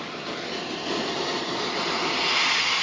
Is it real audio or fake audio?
real